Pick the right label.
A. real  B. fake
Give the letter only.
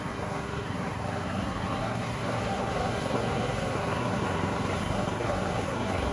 B